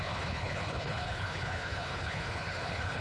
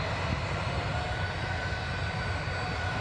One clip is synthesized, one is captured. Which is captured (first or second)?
second